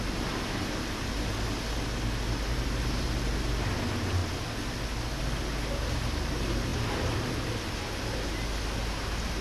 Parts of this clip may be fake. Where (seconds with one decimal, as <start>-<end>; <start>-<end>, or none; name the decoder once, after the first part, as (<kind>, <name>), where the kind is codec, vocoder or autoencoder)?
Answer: none